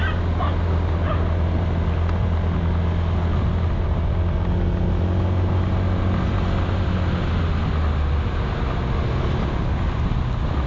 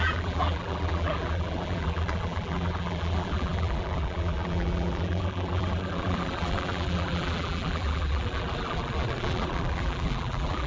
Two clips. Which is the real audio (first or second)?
first